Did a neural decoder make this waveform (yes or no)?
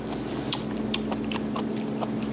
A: no